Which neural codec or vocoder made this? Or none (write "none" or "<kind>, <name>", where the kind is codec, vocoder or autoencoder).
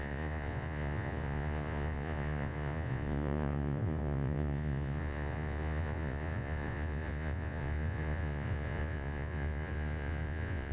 vocoder, Vocos